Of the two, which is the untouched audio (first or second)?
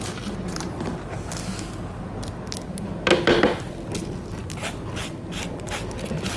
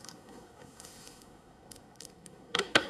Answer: first